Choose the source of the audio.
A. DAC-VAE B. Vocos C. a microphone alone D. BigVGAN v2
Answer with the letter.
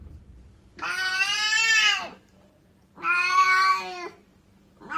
D